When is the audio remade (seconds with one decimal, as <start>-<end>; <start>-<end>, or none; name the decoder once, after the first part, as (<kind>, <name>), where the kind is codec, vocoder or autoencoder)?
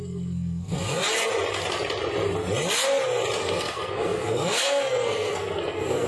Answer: 0.0-1.0 (codec, SNAC); 3.4-6.1